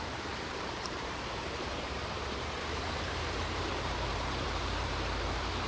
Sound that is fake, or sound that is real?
fake